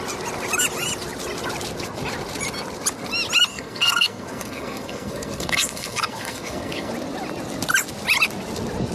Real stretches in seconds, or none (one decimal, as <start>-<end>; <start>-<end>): 0.0-3.5; 6.9-8.9